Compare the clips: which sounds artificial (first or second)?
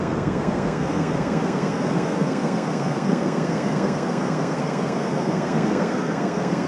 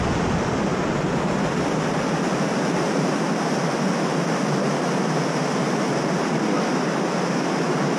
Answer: first